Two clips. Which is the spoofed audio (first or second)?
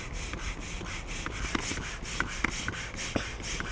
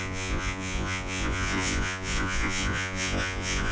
second